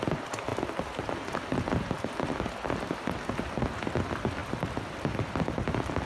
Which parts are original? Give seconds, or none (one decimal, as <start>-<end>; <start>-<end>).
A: 0.0-6.1